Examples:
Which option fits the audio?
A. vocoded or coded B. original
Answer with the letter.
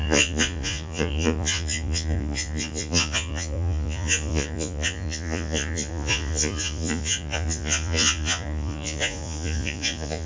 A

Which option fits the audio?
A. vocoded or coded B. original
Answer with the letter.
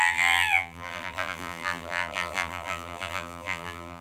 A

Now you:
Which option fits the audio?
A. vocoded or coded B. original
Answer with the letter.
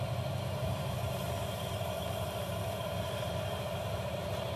A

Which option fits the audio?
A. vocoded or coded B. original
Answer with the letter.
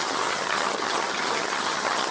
A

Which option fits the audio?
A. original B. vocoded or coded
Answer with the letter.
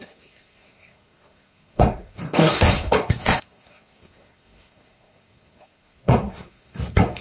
B